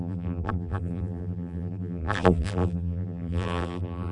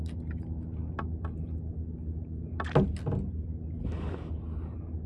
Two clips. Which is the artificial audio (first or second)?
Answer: first